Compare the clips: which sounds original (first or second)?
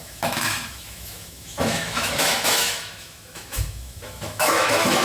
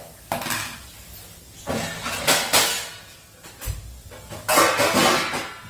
second